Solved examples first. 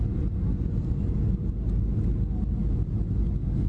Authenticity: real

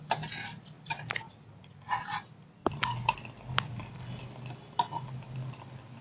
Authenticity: real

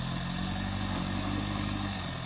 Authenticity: real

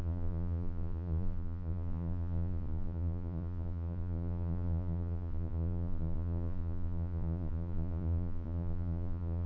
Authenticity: fake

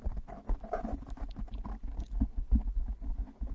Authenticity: real